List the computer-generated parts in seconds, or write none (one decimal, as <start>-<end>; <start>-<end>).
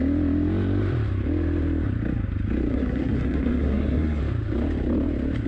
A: 2.7-4.2